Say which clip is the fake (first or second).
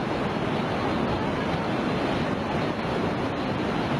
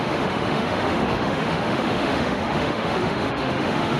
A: second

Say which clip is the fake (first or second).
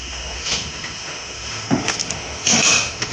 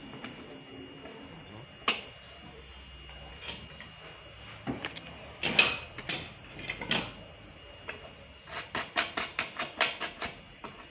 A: first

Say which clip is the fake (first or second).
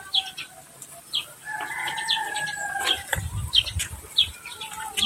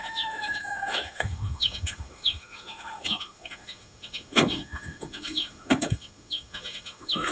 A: second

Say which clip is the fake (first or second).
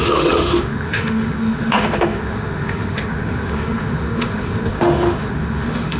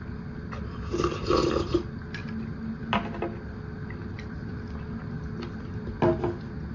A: first